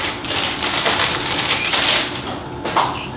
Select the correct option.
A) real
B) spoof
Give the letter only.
A